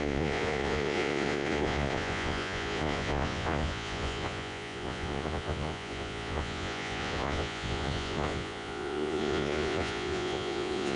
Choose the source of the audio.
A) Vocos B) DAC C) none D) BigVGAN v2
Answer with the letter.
A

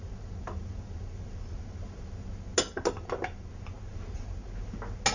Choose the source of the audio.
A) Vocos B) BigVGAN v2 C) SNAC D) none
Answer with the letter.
D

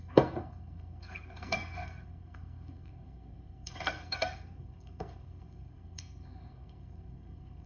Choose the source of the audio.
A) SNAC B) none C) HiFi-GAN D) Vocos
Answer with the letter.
A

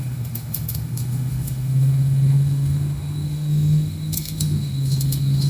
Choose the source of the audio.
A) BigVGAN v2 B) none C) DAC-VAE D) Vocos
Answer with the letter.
C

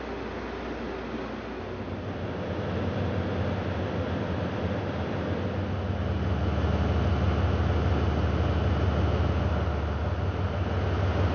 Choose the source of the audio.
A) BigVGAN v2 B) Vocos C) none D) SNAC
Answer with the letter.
C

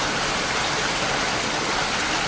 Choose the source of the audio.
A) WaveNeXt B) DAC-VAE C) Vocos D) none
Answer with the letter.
D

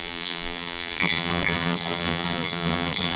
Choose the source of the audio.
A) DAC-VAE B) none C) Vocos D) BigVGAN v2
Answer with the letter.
D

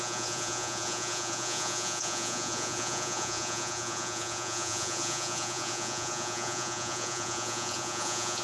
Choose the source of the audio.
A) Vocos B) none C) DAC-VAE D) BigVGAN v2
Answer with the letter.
A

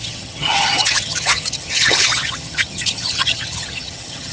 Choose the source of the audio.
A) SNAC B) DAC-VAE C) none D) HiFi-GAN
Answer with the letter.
D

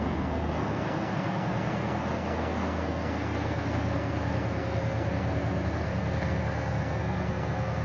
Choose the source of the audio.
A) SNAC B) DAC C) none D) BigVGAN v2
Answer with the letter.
A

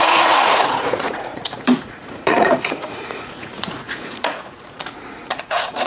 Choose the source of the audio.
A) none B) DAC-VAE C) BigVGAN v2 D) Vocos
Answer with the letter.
D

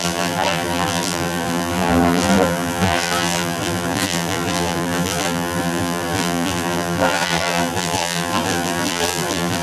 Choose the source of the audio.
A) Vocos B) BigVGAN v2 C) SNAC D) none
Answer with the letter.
B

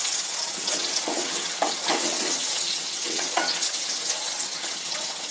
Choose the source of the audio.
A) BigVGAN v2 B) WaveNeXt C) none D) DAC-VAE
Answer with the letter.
B